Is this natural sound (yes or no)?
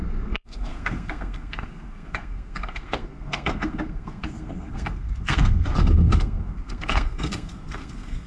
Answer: no